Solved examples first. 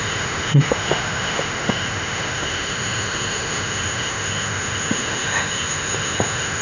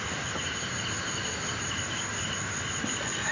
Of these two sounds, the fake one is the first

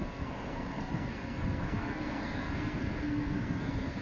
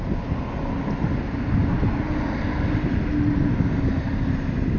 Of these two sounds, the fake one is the first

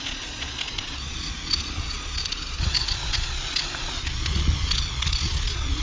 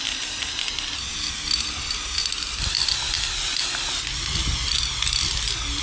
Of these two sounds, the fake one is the first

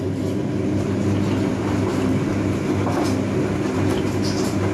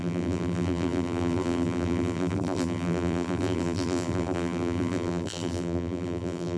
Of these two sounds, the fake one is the second